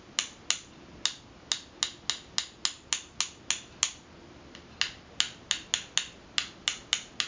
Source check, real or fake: real